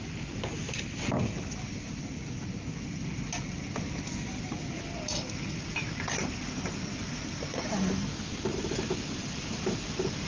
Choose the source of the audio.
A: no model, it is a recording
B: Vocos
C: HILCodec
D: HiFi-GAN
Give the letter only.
A